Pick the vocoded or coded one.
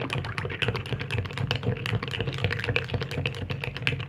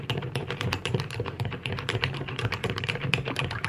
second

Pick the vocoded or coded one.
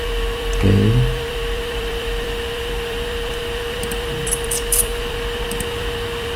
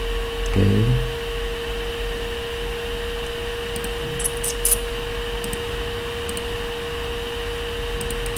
first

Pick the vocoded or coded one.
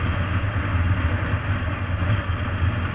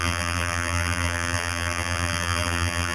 second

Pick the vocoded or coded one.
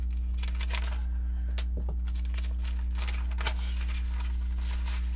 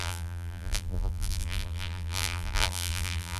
second